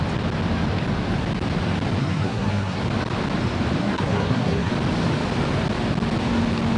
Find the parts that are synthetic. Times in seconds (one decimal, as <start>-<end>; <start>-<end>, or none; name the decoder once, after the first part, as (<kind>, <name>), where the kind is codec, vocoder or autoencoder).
2.0-2.8 (codec, SNAC); 3.8-4.7